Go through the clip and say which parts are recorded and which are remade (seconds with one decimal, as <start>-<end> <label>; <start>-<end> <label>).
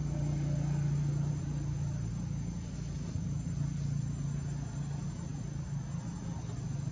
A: 0.0-6.9 recorded